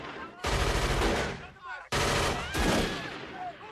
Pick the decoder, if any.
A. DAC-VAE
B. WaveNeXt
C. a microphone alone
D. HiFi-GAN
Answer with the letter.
C